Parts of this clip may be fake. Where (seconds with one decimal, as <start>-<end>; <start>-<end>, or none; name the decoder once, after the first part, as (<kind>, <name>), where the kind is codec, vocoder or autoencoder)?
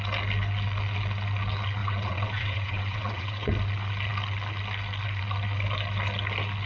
1.8-3.5 (vocoder, WaveNeXt)